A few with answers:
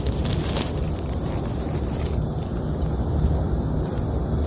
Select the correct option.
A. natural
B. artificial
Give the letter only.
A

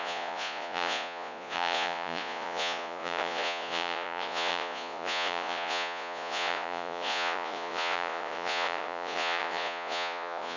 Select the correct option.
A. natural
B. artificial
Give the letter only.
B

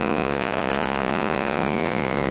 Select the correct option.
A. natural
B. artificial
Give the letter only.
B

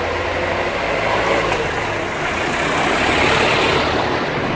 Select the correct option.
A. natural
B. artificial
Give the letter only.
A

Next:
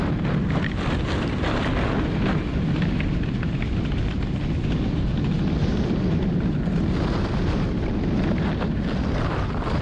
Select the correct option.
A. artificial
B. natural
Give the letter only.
B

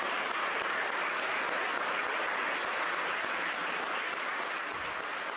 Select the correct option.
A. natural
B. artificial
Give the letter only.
A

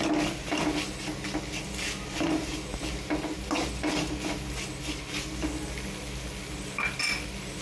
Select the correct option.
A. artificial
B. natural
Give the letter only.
B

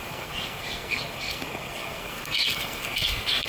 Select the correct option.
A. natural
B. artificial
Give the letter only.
B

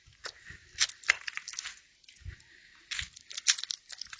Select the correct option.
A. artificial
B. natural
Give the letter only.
B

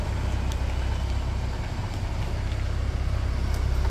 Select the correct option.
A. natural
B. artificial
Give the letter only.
A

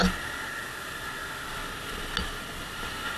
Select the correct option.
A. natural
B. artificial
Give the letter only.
A